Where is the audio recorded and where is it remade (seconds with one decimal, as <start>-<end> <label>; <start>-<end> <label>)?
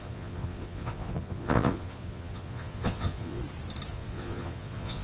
0.0-3.4 remade; 3.4-3.9 recorded; 3.9-5.0 remade